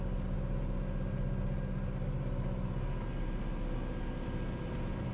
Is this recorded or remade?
recorded